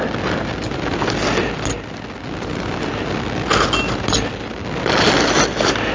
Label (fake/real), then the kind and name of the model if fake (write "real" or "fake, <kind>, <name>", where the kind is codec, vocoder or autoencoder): real